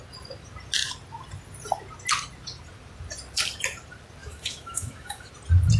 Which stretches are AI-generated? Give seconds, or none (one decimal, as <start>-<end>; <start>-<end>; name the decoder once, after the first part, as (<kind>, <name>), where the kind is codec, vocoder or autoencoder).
4.2-5.3 (autoencoder, DAC-VAE)

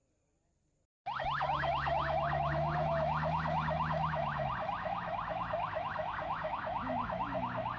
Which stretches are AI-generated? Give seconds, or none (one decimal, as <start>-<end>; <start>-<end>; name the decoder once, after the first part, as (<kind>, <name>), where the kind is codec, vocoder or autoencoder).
1.2-7.8 (autoencoder, DAC-VAE)

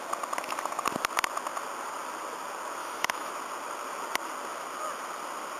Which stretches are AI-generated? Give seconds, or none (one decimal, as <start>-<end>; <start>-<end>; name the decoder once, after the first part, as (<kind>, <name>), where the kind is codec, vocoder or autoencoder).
2.8-3.3 (autoencoder, DAC-VAE)

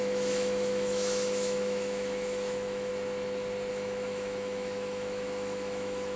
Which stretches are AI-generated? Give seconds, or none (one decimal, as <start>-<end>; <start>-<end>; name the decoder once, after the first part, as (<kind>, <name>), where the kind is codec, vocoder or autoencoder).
0.0-2.9 (autoencoder, DAC-VAE); 3.7-6.2